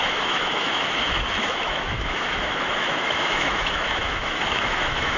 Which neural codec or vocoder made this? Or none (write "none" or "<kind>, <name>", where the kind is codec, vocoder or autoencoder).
autoencoder, DAC-VAE